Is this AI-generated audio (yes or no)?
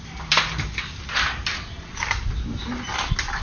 no